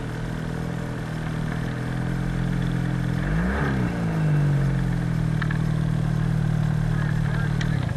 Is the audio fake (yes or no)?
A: no